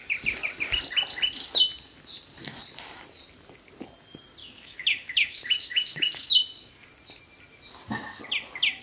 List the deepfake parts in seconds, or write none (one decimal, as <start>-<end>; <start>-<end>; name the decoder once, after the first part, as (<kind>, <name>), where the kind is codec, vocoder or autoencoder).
4.4-6.3 (autoencoder, DAC-VAE)